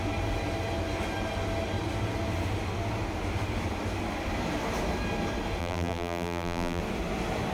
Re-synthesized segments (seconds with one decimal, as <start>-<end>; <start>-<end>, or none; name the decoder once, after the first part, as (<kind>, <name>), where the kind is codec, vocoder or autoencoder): 5.6-6.8 (vocoder, BigVGAN v2)